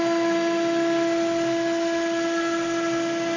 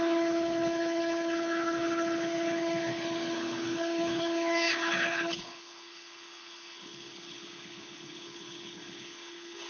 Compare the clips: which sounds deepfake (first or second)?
second